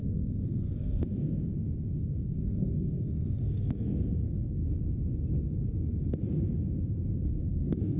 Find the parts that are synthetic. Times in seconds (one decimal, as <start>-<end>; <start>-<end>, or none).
0.0-1.5; 2.0-4.6; 7.4-8.0